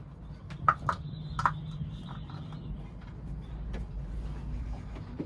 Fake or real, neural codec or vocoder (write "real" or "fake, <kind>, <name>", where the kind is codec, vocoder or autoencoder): real